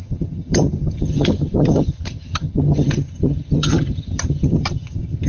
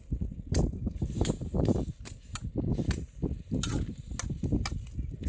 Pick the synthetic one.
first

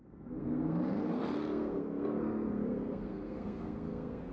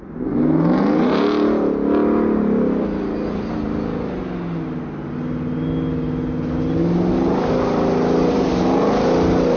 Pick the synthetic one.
first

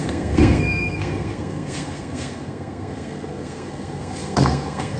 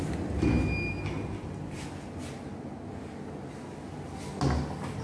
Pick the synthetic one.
first